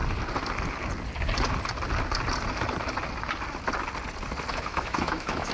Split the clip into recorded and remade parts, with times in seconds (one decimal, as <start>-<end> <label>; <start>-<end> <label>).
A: 0.0-4.5 recorded; 4.5-5.5 remade